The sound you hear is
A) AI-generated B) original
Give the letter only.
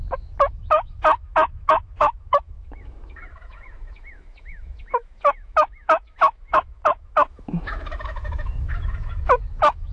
A